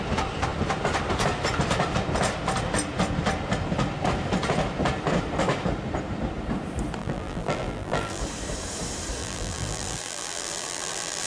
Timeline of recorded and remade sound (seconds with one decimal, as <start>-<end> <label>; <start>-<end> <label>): 0.0-7.0 recorded; 7.0-8.2 remade; 8.2-9.2 recorded; 9.2-11.3 remade

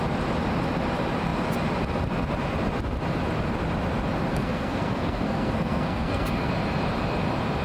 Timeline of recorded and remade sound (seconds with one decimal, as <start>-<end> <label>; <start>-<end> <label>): 0.0-4.3 recorded; 4.3-6.5 remade; 6.5-7.6 recorded

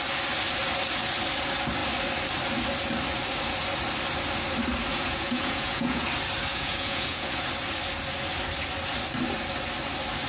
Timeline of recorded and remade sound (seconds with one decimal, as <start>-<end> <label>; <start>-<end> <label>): 0.0-4.9 recorded; 4.9-6.1 remade; 6.1-6.5 recorded; 6.5-7.3 remade; 7.3-10.3 recorded

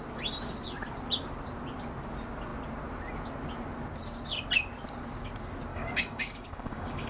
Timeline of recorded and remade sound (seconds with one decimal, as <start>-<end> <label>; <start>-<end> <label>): 0.0-5.7 recorded; 5.7-7.1 remade

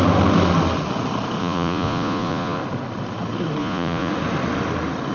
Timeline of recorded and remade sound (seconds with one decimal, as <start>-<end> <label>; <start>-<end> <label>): 0.0-1.4 recorded; 1.4-2.6 remade; 2.6-3.6 recorded; 3.6-4.1 remade; 4.1-5.1 recorded

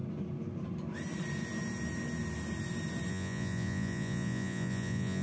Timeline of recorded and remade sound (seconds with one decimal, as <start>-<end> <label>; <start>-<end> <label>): 0.0-3.1 recorded; 3.1-5.2 remade